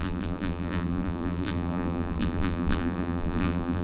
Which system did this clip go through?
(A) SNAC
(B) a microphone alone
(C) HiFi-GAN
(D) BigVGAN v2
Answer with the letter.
D